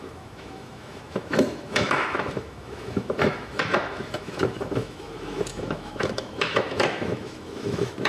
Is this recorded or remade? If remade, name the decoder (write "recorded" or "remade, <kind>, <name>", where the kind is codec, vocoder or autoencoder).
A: remade, autoencoder, DAC-VAE